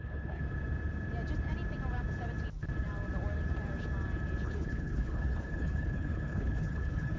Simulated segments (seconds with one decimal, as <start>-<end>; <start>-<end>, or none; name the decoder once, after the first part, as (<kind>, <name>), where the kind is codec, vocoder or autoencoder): 0.0-0.4 (codec, HILCodec); 4.4-7.2